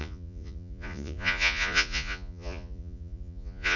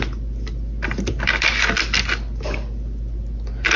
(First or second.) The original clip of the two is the second